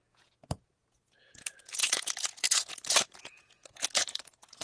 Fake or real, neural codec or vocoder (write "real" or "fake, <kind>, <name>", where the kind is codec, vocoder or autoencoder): fake, vocoder, Vocos